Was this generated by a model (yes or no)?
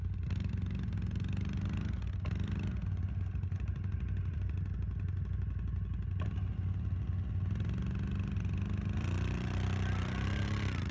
no